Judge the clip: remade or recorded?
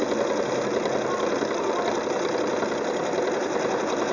recorded